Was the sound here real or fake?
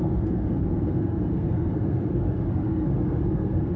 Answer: fake